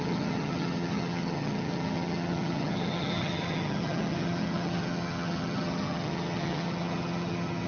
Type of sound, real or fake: fake